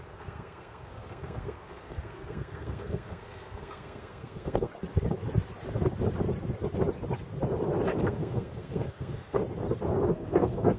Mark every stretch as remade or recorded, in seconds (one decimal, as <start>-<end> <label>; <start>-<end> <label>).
0.0-4.7 remade; 4.7-8.0 recorded; 8.0-9.4 remade; 9.4-10.1 recorded; 10.1-10.8 remade